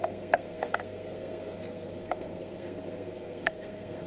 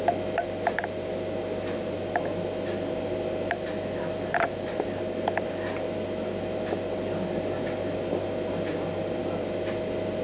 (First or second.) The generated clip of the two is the first